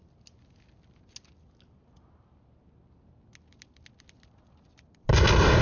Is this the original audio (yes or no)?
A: yes